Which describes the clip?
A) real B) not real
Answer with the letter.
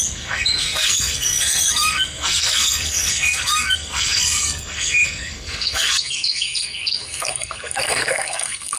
B